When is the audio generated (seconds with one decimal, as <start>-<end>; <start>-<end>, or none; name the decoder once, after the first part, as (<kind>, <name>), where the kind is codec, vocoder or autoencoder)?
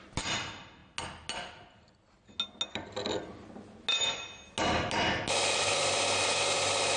none